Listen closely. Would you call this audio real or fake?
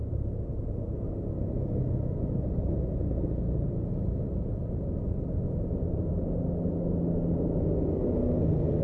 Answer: real